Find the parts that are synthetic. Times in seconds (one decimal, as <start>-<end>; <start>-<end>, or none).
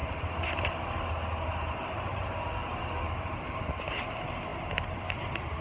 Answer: 2.6-3.7